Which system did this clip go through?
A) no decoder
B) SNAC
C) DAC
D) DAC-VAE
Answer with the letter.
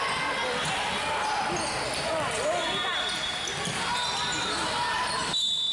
A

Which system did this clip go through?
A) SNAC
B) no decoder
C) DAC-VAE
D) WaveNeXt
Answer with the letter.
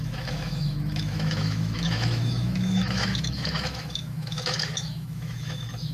C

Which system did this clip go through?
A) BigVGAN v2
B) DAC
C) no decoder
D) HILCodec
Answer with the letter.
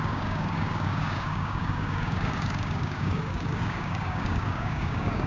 B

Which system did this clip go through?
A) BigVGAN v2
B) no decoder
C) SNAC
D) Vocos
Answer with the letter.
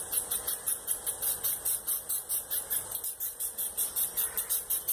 A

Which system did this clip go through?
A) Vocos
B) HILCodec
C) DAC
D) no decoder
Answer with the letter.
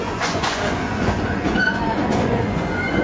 A